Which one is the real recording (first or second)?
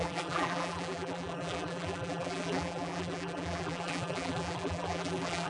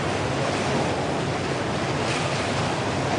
second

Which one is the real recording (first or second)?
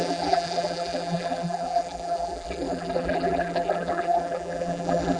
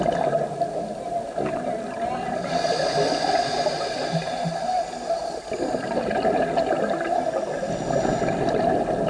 second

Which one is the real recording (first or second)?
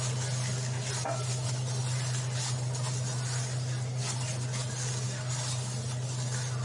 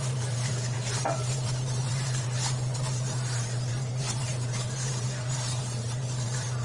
first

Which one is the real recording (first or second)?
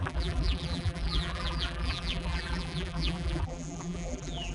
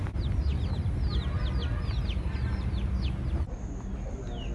second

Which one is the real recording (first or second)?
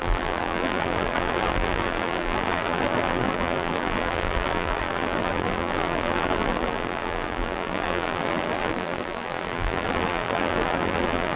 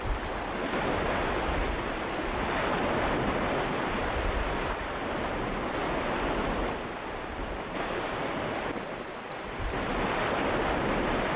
second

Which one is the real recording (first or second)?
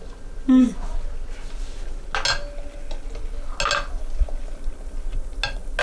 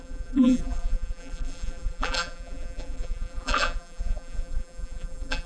first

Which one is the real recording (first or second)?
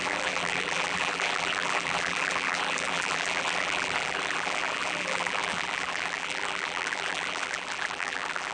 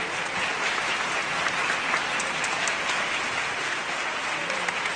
second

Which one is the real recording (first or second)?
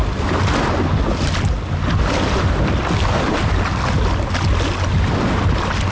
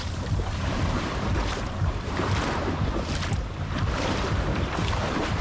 first